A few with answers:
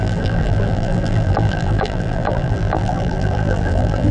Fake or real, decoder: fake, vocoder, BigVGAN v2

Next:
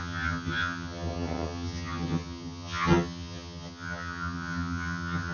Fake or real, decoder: fake, vocoder, HiFi-GAN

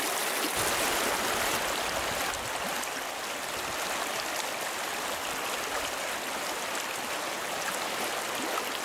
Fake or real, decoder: real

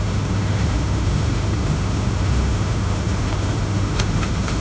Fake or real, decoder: fake, autoencoder, DAC-VAE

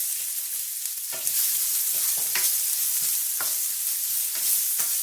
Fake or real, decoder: real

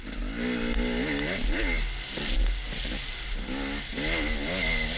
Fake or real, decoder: real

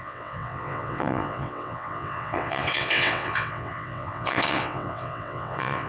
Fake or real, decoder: fake, vocoder, WaveNeXt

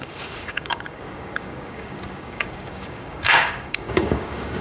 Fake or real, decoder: fake, codec, DAC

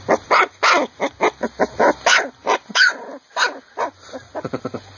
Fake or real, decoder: real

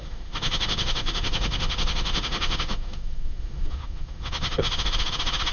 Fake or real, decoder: fake, autoencoder, DAC-VAE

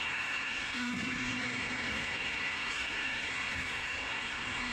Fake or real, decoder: fake, codec, SNAC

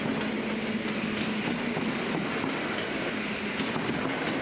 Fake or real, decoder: real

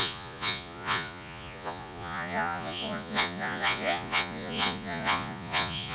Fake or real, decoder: fake, vocoder, Vocos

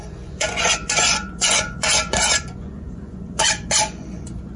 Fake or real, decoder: fake, vocoder, Vocos